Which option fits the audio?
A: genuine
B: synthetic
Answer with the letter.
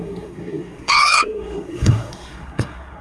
B